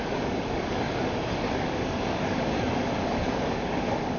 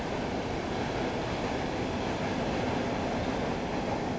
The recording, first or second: second